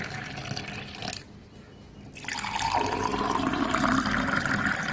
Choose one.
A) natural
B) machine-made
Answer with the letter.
A